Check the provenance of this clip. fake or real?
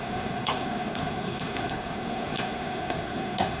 fake